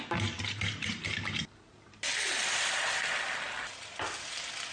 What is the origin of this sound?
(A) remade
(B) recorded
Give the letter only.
B